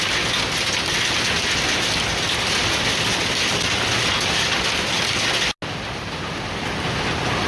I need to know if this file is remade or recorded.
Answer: recorded